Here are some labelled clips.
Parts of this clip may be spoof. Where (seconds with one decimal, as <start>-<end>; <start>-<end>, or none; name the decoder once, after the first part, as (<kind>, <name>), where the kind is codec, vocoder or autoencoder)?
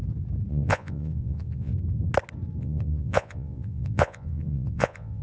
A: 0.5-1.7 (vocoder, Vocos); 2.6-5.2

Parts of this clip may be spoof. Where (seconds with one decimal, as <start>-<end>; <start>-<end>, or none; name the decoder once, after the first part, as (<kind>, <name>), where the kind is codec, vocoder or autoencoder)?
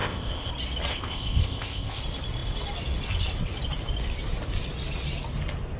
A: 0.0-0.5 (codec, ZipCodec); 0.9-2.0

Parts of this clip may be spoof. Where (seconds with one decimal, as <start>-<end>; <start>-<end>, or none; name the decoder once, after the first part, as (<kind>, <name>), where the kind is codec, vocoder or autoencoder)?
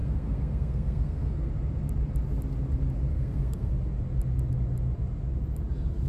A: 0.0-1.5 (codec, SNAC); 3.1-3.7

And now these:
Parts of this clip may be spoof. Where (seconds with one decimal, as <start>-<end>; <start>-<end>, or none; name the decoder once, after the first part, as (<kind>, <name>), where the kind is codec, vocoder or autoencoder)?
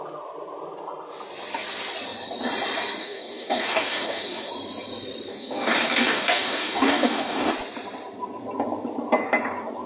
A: 3.0-4.5 (codec, DAC); 5.3-7.5